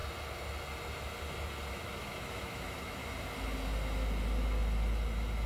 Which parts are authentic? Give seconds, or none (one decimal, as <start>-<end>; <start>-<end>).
0.0-1.7; 3.0-5.5